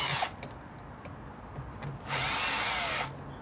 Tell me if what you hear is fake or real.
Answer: real